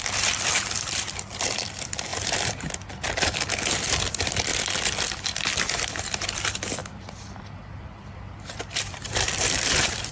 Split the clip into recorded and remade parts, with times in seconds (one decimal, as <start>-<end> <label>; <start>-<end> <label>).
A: 0.0-2.1 remade; 2.1-3.7 recorded; 3.7-4.5 remade; 4.5-5.0 recorded; 5.0-10.1 remade